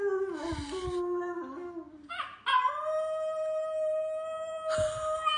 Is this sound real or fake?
real